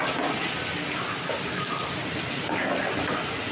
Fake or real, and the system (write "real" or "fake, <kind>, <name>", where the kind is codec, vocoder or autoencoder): real